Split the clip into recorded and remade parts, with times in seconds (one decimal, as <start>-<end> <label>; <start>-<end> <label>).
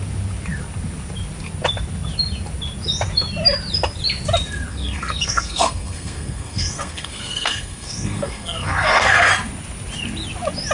0.0-4.7 recorded; 4.7-9.3 remade; 9.3-10.7 recorded